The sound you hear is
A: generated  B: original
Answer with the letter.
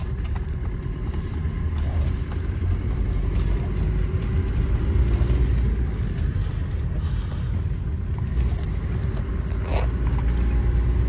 B